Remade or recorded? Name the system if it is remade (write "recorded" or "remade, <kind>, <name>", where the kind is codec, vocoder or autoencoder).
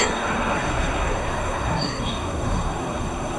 remade, codec, SNAC